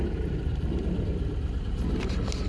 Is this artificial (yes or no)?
no